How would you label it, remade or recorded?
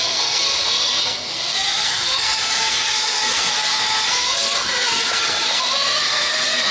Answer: remade